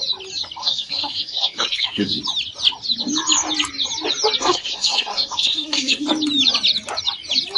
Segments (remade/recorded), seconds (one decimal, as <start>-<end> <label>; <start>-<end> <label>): 0.0-0.6 recorded; 0.6-2.2 remade; 2.2-4.4 recorded; 4.4-6.1 remade; 6.1-7.6 recorded